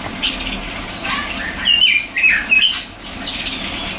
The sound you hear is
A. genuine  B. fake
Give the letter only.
A